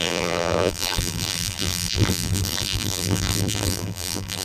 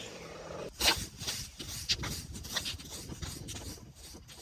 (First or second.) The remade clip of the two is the first